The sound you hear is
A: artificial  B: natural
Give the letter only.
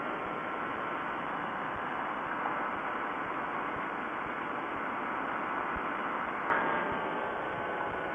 B